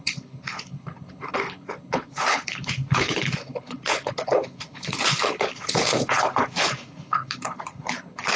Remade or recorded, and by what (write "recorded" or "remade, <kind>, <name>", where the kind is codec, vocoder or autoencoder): remade, codec, HILCodec